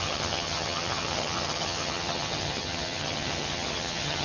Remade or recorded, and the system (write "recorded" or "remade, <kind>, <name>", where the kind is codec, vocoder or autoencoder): remade, vocoder, HiFi-GAN